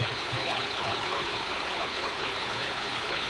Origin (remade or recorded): remade